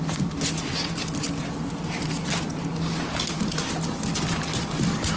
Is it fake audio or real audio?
real